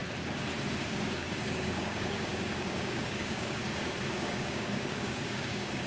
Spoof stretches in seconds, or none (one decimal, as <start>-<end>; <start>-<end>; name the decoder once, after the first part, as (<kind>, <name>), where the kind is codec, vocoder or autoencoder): 0.8-3.6 (codec, DAC); 4.1-5.9